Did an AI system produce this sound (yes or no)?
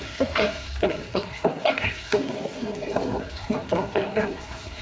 yes